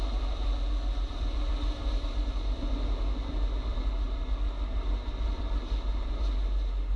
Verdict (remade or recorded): recorded